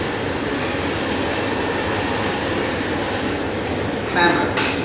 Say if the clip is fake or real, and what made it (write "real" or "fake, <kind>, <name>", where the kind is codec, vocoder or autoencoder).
real